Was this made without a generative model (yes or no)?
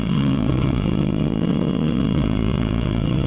no